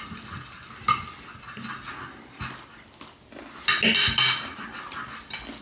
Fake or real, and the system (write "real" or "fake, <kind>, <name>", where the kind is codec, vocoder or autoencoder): real